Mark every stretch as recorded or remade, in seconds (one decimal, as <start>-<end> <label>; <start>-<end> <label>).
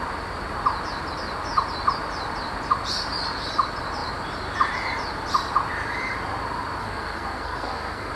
0.0-6.8 recorded; 6.8-8.1 remade